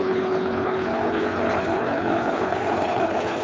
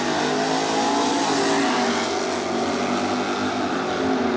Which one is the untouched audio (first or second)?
second